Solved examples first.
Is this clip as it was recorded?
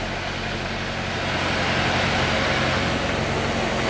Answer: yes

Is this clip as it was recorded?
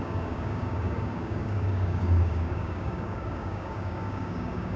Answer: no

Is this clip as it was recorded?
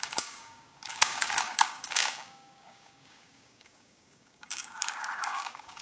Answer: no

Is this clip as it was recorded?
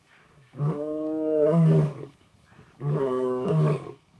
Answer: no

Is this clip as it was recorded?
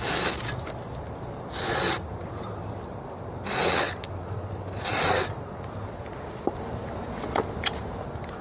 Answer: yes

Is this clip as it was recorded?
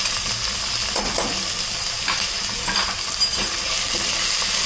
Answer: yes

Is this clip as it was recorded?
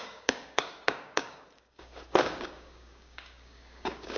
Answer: no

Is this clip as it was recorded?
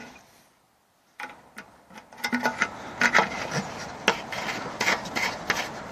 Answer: yes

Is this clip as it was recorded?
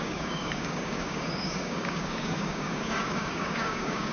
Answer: no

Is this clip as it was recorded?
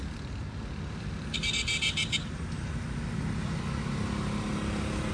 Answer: yes